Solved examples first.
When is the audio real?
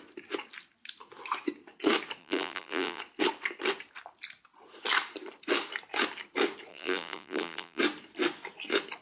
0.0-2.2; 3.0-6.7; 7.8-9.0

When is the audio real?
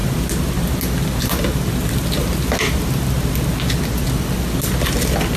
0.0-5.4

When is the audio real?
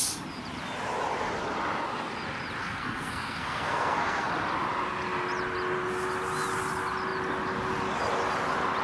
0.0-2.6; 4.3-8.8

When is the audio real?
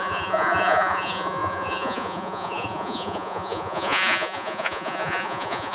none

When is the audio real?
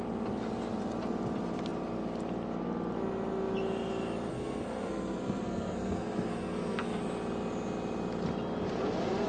0.0-4.3; 7.0-9.3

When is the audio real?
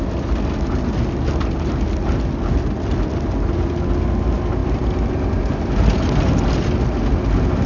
0.0-4.6; 5.4-7.7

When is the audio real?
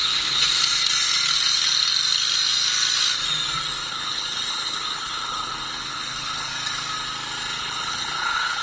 0.5-3.9; 6.5-7.6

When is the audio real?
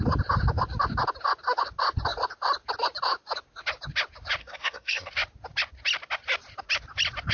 0.0-4.4; 5.1-7.3